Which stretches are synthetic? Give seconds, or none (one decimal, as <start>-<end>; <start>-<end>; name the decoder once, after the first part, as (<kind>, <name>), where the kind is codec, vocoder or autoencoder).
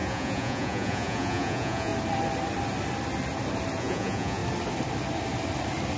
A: 0.0-1.9 (vocoder, Vocos); 3.8-4.4